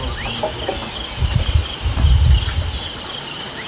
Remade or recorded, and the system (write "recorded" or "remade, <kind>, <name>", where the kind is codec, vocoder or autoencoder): recorded